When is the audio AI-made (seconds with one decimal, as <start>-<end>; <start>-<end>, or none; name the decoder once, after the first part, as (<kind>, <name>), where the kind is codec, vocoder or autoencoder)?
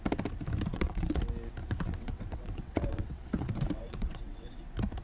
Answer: 0.7-1.2 (vocoder, WaveNeXt); 1.6-4.6